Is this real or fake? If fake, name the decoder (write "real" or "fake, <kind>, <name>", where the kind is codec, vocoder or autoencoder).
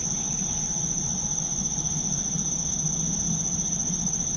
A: real